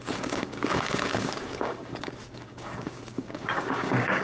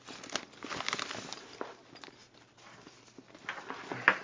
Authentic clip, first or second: second